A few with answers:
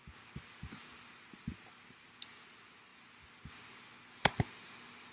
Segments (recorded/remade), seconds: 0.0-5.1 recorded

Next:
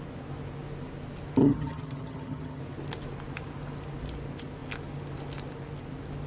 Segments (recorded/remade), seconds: 0.0-1.4 recorded; 1.4-2.6 remade; 2.6-6.3 recorded

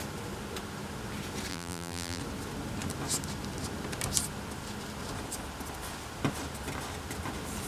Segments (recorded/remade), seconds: 0.0-1.5 recorded; 1.5-2.2 remade; 2.2-7.7 recorded

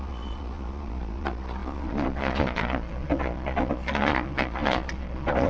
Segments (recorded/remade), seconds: 0.0-5.5 remade

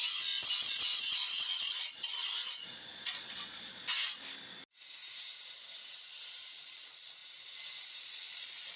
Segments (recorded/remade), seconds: 0.0-3.8 remade; 3.8-5.9 recorded; 5.9-7.2 remade; 7.2-8.0 recorded; 8.0-8.8 remade

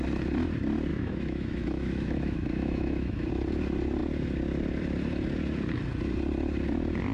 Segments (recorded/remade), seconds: 0.0-0.9 recorded; 0.9-3.3 remade; 3.3-7.1 recorded

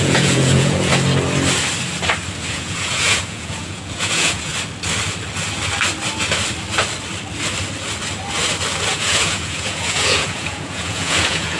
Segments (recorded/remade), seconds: 0.0-0.9 remade; 0.9-2.5 recorded; 2.5-4.5 remade; 4.5-8.9 recorded; 8.9-11.6 remade